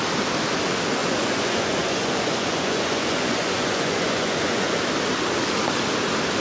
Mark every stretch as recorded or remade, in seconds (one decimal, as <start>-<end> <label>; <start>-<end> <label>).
0.0-1.0 recorded; 1.0-4.8 remade; 4.8-6.4 recorded